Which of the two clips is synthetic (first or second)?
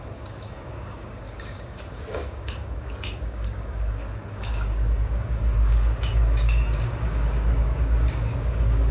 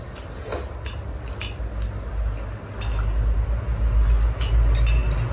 first